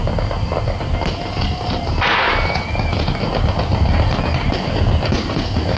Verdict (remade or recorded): recorded